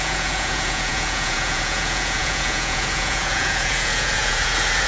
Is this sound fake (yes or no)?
yes